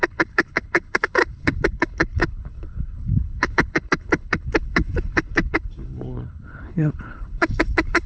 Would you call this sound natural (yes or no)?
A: no